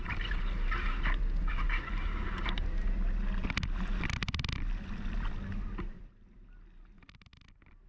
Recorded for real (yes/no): yes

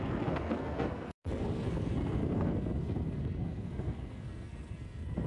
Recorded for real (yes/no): no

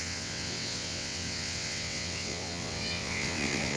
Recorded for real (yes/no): no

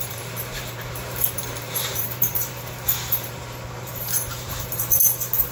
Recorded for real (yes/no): no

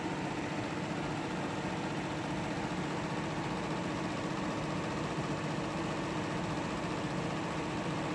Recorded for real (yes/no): yes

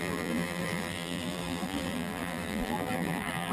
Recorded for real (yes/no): no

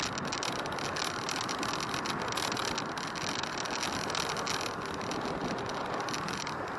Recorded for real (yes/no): yes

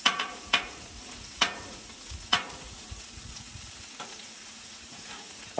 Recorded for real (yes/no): no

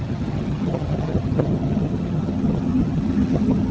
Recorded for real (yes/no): no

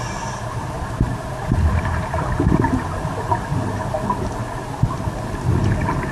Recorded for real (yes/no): yes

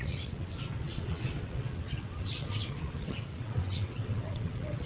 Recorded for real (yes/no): no